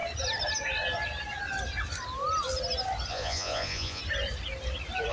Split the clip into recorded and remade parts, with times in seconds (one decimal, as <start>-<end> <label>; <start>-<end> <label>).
0.0-3.1 recorded; 3.1-4.0 remade; 4.0-5.1 recorded